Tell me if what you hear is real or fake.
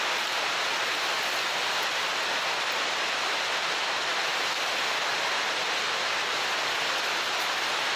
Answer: real